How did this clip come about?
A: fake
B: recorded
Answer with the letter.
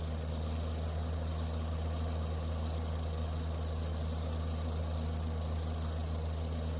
B